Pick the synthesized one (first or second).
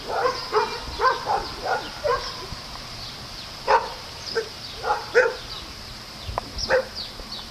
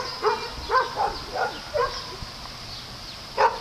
first